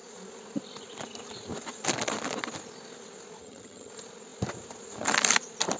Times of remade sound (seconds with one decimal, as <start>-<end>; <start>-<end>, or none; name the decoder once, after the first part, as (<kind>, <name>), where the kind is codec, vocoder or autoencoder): 3.4-3.9 (vocoder, HiFi-GAN)